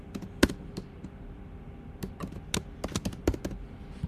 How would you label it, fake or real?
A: real